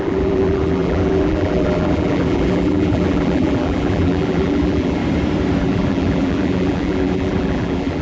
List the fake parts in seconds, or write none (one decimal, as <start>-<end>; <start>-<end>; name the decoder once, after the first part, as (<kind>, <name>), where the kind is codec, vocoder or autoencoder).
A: 0.0-5.0 (vocoder, BigVGAN v2); 5.6-8.0